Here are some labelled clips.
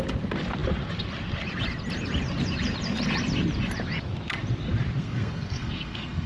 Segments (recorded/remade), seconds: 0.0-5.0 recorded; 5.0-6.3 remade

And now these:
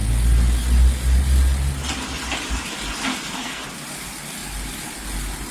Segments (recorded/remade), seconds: 0.0-3.1 recorded; 3.1-3.6 remade; 3.6-5.5 recorded